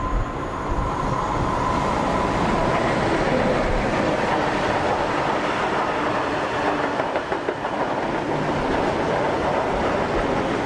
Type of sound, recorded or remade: recorded